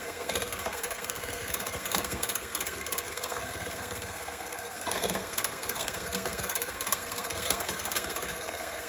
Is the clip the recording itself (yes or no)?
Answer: no